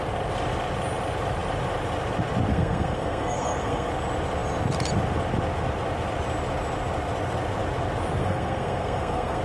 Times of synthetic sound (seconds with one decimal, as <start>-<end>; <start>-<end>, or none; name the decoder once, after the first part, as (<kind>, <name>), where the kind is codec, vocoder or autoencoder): 2.5-3.9 (codec, SNAC); 8.2-9.4